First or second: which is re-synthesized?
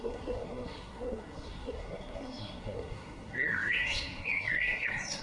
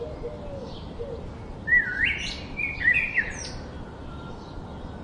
first